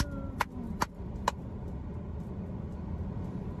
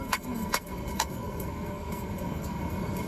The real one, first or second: first